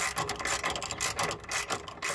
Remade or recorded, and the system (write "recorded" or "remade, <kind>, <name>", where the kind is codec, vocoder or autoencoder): recorded